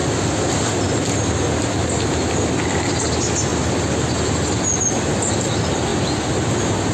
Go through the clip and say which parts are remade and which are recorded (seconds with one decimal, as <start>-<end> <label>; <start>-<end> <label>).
0.0-3.0 remade; 3.0-3.5 recorded; 3.5-4.6 remade; 4.6-6.9 recorded